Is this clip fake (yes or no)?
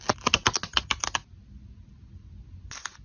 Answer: no